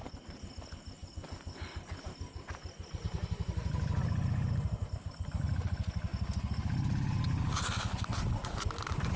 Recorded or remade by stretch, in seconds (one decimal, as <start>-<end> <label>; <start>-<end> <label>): 0.0-9.2 recorded